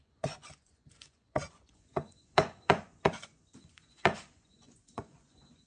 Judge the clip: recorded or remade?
remade